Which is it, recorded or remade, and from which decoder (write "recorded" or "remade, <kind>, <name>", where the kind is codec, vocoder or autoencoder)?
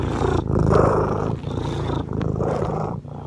recorded